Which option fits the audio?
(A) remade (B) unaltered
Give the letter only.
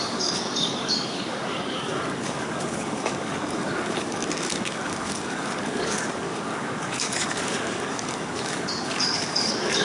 A